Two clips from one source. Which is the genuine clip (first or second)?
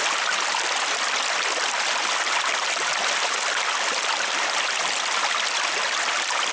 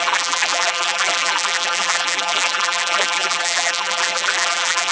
first